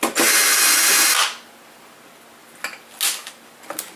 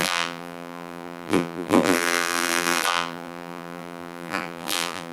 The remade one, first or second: second